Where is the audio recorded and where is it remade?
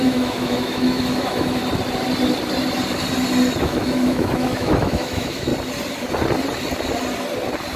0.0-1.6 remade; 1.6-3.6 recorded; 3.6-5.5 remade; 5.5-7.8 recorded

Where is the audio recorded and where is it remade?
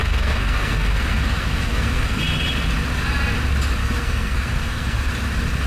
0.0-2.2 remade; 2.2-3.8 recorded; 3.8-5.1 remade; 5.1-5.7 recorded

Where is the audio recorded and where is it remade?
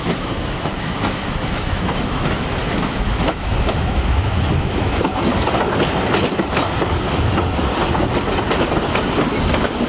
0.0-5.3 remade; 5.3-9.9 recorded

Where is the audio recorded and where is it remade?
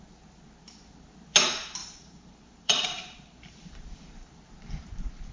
0.0-1.8 recorded; 1.8-5.3 remade